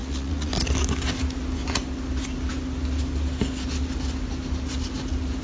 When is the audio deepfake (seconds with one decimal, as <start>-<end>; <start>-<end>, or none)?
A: 0.0-0.5